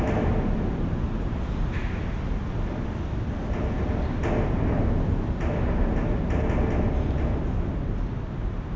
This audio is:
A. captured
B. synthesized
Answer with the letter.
A